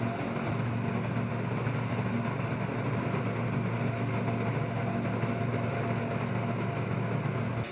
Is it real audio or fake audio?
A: real